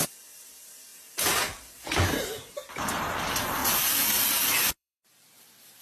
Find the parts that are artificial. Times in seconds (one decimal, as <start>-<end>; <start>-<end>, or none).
0.0-0.9; 2.7-3.6; 4.7-5.8